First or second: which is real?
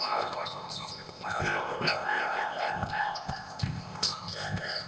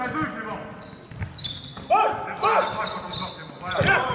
second